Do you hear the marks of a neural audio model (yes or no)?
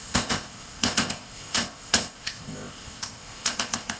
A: yes